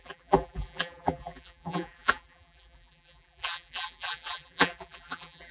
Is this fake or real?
fake